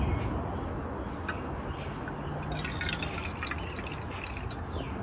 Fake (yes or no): no